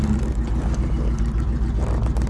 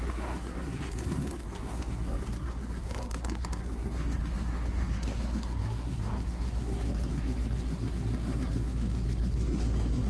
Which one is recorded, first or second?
first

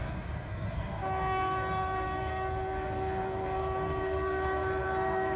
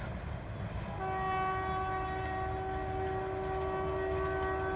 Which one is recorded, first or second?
second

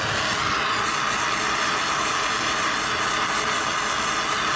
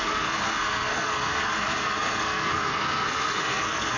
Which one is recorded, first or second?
first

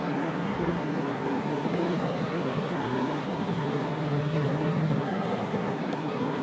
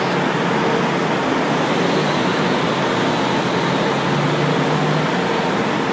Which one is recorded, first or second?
second